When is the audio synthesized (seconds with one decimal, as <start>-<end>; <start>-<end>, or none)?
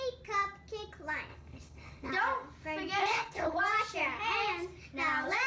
1.3-2.1; 3.0-3.6